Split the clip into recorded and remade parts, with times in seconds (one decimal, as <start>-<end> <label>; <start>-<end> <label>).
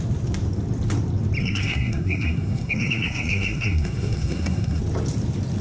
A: 0.0-1.4 recorded; 1.4-4.8 remade; 4.8-5.6 recorded